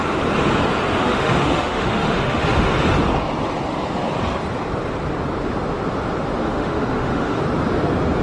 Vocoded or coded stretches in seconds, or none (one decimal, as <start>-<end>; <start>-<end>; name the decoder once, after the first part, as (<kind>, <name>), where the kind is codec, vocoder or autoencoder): 1.0-2.7 (autoencoder, DAC-VAE); 6.4-7.4